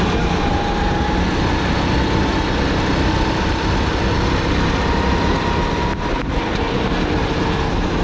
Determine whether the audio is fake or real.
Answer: real